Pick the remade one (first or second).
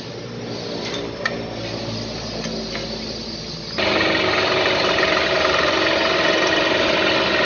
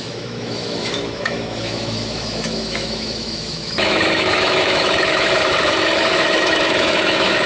second